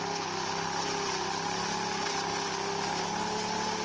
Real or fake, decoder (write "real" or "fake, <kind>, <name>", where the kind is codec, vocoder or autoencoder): real